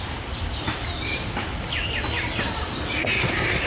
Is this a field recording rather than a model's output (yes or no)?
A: yes